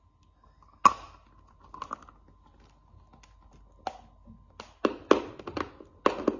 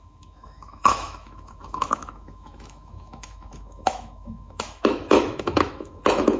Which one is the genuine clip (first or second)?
first